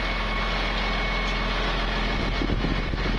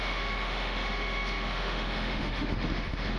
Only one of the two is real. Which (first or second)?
first